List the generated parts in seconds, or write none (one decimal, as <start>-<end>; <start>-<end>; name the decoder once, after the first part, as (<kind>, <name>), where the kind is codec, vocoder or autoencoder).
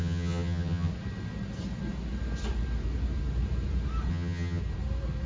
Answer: 0.0-0.9 (vocoder, HiFi-GAN); 4.1-4.6